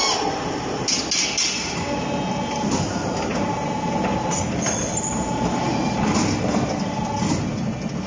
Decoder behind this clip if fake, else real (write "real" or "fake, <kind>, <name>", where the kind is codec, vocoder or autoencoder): real